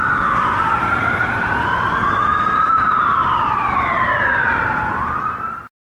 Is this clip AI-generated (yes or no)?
yes